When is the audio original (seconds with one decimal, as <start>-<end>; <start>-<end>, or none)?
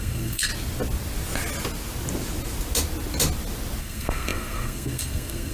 0.5-3.8